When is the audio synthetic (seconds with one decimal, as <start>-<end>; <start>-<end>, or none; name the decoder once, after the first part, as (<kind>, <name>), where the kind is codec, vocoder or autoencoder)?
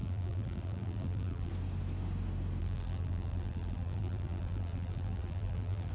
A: 0.0-1.5 (vocoder, BigVGAN v2); 2.6-5.9